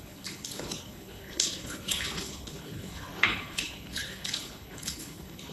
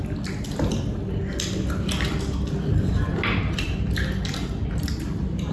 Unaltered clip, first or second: second